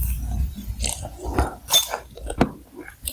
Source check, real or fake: real